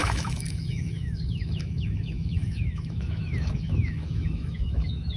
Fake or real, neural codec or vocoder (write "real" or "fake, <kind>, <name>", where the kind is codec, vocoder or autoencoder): fake, autoencoder, DAC-VAE